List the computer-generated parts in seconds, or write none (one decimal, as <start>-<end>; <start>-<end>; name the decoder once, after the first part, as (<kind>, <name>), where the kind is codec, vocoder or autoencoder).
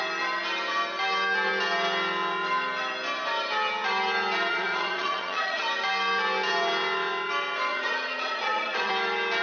4.5-5.6 (vocoder, Vocos); 7.7-8.9